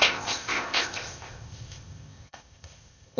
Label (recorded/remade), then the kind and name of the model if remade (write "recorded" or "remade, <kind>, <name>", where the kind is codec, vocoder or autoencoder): remade, codec, ZipCodec